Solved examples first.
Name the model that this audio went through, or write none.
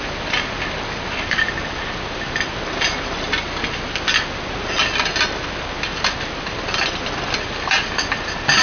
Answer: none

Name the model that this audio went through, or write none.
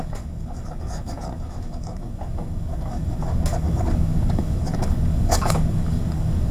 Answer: codec, DAC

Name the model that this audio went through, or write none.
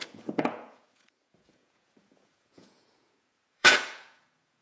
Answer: vocoder, Vocos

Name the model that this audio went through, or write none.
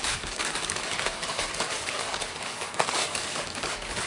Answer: codec, DAC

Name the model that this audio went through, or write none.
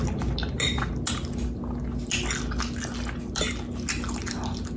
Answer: none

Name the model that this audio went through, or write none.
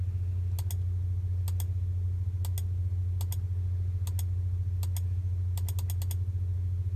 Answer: none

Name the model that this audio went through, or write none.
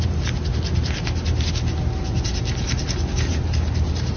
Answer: none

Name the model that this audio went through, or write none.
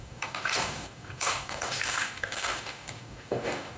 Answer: codec, DAC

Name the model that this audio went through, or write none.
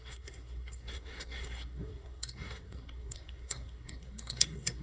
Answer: codec, SNAC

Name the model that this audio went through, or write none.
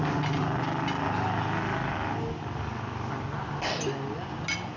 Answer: none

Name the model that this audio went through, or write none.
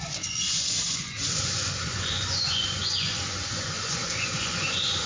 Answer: vocoder, Vocos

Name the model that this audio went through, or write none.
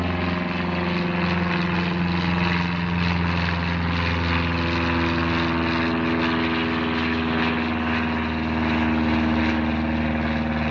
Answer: none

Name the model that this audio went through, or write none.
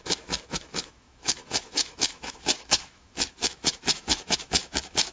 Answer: autoencoder, DAC-VAE